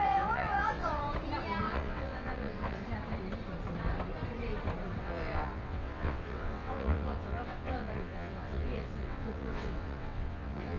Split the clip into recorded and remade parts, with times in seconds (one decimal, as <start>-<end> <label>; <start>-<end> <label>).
0.0-1.0 remade; 1.0-1.6 recorded; 1.6-2.8 remade; 2.8-5.0 recorded; 5.0-10.8 remade